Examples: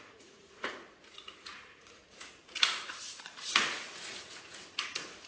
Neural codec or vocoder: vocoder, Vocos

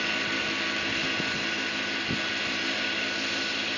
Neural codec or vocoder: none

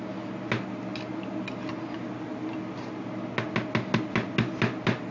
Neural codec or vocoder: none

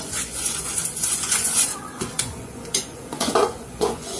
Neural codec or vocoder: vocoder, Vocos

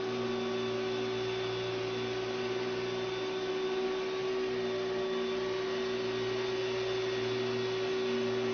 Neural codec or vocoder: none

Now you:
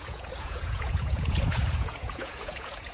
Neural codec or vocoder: vocoder, Vocos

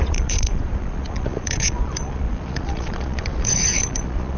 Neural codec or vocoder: vocoder, Vocos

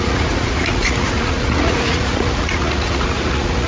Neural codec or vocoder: vocoder, Vocos